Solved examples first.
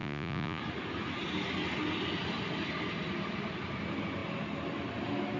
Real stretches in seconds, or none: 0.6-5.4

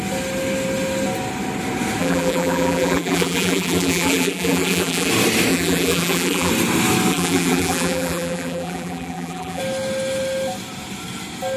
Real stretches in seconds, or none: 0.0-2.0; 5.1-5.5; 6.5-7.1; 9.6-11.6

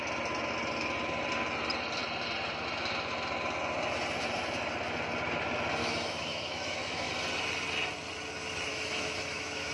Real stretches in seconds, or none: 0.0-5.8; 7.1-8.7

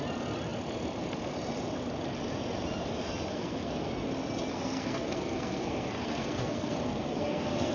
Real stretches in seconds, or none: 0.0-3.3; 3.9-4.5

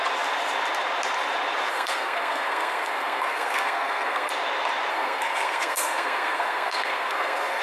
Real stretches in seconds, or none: 0.0-1.7; 4.3-4.9

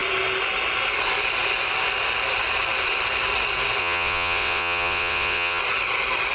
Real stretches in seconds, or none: 0.0-3.8; 5.6-6.3